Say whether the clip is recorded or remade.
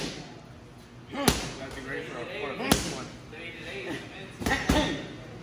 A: recorded